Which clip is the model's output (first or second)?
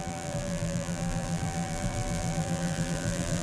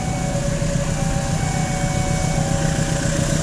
first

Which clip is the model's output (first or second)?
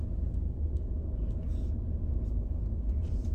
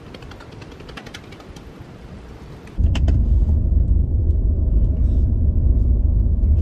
second